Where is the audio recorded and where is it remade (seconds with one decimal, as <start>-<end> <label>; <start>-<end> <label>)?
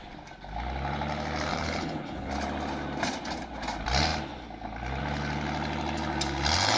0.0-1.5 recorded; 1.5-2.3 remade; 2.3-6.8 recorded